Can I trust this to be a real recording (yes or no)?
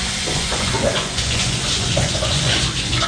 no